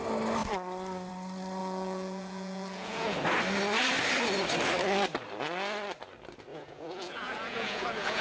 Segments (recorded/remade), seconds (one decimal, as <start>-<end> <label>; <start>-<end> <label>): 0.0-1.6 recorded; 1.6-3.2 remade; 3.2-6.5 recorded; 6.5-8.2 remade